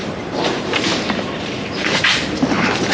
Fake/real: fake